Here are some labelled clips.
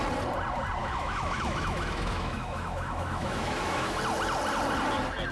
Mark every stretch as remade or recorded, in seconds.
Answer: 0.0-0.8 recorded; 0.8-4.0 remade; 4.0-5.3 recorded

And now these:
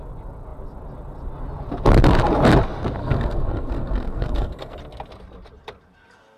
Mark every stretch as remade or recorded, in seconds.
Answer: 0.0-3.0 recorded; 3.0-4.8 remade; 4.8-6.4 recorded

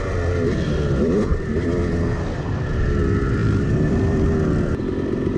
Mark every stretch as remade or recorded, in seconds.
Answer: 0.0-3.4 recorded; 3.4-4.8 remade; 4.8-5.4 recorded